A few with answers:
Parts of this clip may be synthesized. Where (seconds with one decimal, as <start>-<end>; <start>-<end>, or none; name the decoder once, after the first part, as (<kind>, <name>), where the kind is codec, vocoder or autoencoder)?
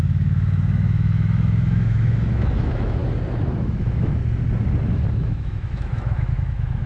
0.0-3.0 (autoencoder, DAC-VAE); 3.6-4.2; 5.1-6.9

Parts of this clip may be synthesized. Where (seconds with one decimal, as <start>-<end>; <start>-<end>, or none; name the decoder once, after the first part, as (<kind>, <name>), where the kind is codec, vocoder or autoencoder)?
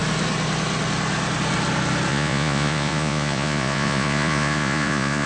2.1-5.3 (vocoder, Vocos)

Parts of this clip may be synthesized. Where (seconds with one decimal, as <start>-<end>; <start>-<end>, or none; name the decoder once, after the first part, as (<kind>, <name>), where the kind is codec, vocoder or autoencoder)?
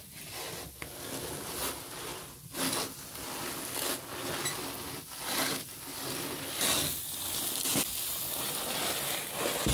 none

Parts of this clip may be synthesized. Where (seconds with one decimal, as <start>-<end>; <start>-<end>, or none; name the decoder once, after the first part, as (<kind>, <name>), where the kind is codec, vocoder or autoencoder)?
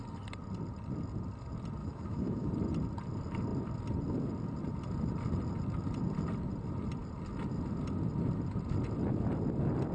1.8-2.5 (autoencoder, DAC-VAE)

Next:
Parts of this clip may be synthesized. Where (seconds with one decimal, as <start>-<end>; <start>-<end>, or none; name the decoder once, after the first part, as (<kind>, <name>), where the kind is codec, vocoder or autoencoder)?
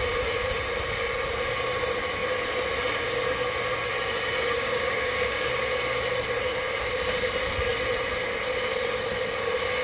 4.5-5.5 (codec, DAC)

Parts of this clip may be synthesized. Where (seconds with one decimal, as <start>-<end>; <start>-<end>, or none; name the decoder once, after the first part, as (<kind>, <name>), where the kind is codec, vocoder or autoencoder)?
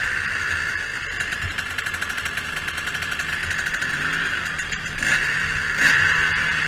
none